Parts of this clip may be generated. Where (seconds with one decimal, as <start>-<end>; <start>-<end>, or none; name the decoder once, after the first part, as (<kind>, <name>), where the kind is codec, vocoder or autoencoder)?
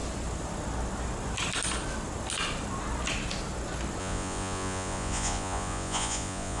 4.0-6.6 (vocoder, Vocos)